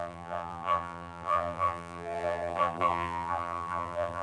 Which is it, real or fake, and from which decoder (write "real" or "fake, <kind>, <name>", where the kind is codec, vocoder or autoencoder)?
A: fake, vocoder, BigVGAN v2